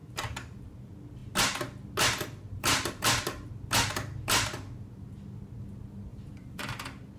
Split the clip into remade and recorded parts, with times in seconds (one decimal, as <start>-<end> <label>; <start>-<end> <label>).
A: 0.0-0.6 remade; 0.6-6.1 recorded; 6.1-6.7 remade; 6.7-7.2 recorded